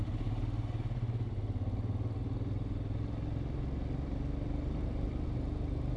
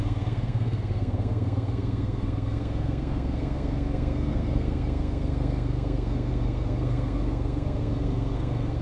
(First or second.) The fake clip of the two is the second